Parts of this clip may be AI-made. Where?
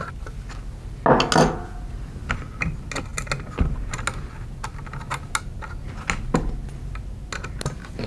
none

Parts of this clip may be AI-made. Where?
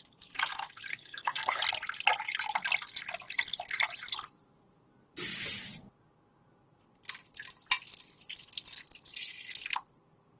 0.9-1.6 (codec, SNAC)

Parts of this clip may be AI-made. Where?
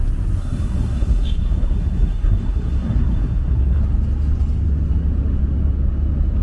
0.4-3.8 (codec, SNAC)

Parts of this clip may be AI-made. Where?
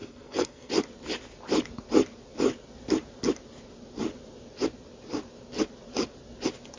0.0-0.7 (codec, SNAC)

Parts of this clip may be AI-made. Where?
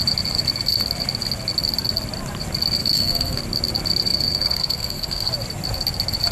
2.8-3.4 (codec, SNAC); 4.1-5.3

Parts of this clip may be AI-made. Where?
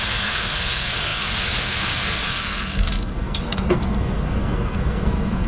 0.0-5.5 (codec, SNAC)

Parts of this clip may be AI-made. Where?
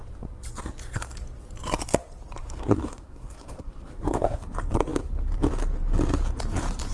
2.4-4.4 (codec, SNAC)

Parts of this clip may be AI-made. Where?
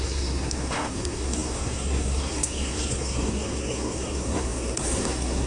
0.0-5.5 (codec, SNAC)